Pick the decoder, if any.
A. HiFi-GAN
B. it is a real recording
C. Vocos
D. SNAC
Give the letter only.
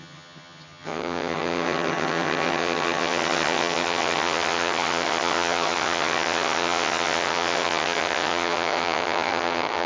A